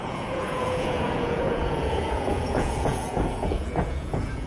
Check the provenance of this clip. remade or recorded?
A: remade